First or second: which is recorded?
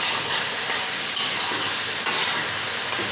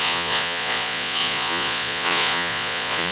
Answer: first